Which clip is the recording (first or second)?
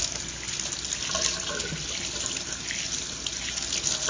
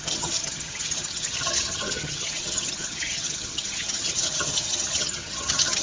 first